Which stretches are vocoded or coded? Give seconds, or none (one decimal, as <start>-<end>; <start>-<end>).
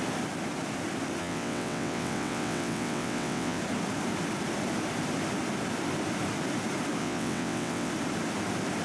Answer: 1.2-3.6; 7.0-7.9